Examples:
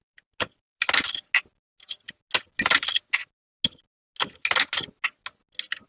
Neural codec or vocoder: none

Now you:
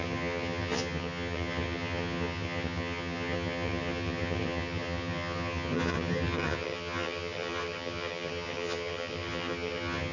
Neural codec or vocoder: vocoder, HiFi-GAN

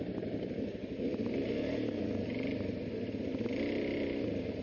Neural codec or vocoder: none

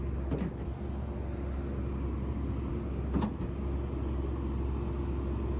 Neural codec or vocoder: none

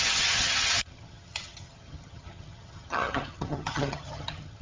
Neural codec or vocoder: vocoder, HiFi-GAN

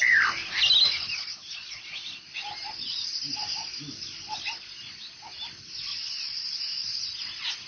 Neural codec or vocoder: none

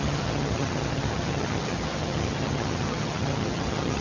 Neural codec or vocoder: vocoder, HiFi-GAN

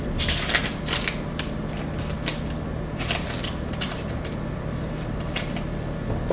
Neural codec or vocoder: none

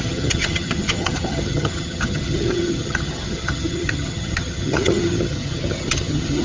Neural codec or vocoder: vocoder, HiFi-GAN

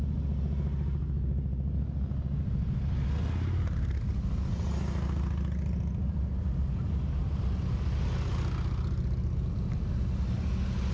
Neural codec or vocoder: none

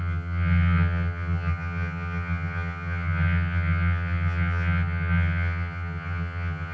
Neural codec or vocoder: vocoder, HiFi-GAN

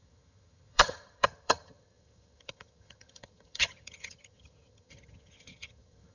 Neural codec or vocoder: vocoder, HiFi-GAN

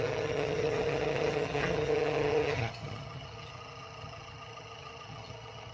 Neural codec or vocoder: vocoder, HiFi-GAN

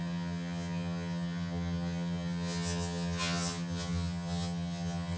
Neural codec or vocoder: vocoder, HiFi-GAN